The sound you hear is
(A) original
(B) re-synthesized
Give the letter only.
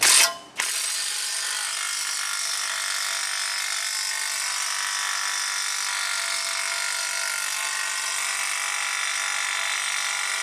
A